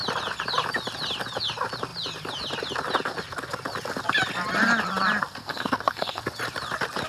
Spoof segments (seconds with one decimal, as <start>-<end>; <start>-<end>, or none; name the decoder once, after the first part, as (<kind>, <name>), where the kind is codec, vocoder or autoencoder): 5.4-6.2 (codec, SNAC)

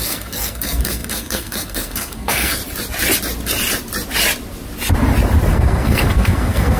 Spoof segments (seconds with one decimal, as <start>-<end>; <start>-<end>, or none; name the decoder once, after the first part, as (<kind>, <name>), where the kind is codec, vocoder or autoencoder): 0.0-2.6 (codec, SNAC); 5.5-6.8

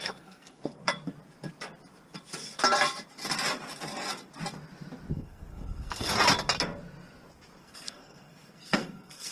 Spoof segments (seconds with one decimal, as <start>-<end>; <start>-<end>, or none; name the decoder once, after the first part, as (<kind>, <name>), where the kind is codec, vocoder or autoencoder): 0.0-0.8 (codec, SNAC); 5.1-6.1; 7.6-9.3